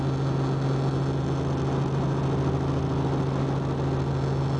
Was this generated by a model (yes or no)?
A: no